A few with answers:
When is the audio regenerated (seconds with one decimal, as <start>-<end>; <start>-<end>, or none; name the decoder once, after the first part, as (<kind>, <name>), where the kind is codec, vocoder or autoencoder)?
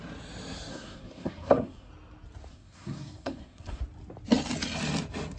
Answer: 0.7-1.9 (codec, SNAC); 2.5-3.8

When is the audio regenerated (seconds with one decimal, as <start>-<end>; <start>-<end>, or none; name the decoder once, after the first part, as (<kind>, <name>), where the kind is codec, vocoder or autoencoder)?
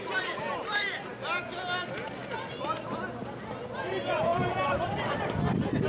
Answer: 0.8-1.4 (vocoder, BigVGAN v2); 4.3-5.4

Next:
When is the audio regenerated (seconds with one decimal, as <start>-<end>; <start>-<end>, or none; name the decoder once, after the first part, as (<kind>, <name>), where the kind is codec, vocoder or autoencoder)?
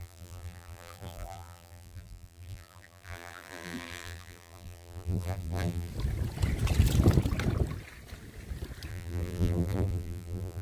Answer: 0.0-5.9 (vocoder, BigVGAN v2); 8.9-10.6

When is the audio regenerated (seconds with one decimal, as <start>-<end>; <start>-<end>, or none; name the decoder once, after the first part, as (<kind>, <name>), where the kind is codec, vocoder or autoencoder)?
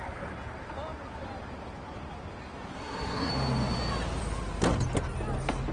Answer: 2.7-3.3 (codec, SNAC)